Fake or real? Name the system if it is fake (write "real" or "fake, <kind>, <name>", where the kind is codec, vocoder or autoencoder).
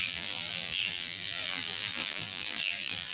fake, vocoder, BigVGAN v2